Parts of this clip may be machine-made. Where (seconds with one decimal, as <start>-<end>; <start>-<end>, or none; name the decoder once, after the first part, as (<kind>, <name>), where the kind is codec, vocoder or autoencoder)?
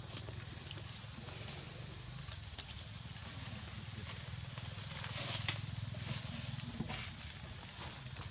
none